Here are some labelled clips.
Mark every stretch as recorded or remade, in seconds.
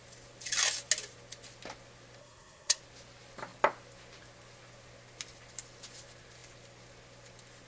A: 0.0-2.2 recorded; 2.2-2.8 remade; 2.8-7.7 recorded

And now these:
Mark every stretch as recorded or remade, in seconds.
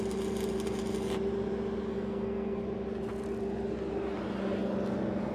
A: 0.0-1.9 recorded; 1.9-2.6 remade; 2.6-5.3 recorded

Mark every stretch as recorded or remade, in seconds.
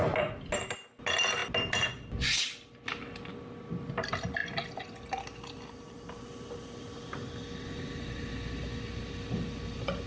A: 0.0-10.1 recorded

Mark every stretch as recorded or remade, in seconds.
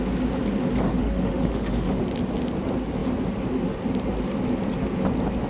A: 0.0-1.0 recorded; 1.0-2.0 remade; 2.0-5.5 recorded